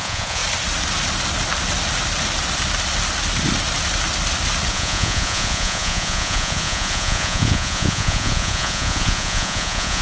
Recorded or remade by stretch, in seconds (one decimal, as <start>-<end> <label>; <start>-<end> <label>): 0.0-0.4 remade; 0.4-4.7 recorded; 4.7-10.0 remade